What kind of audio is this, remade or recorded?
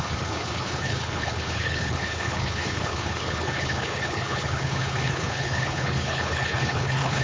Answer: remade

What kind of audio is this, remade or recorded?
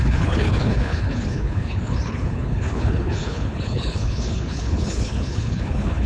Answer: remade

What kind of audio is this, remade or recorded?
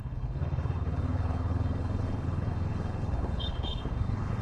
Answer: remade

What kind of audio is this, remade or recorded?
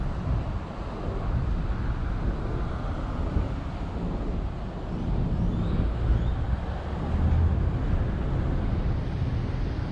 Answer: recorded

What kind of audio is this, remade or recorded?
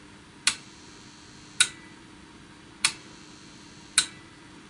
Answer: recorded